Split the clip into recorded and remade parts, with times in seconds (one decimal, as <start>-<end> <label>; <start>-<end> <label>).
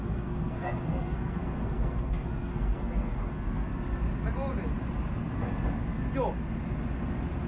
0.0-3.7 remade; 3.7-7.5 recorded